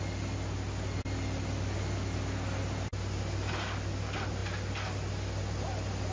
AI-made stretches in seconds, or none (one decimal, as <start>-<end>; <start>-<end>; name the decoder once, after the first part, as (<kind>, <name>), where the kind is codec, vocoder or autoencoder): none